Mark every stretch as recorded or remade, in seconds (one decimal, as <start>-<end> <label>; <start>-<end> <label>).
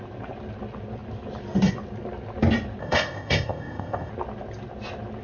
0.0-2.8 recorded; 2.8-4.1 remade; 4.1-5.2 recorded